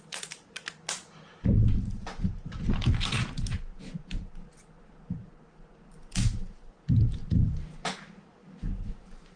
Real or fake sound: real